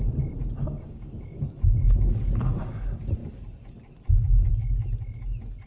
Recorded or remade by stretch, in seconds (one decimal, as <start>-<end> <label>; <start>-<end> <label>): 0.0-0.6 recorded; 0.6-1.5 remade; 1.5-5.7 recorded